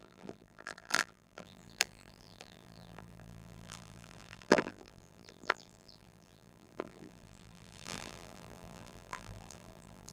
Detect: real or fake fake